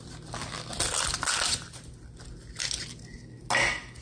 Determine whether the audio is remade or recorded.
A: recorded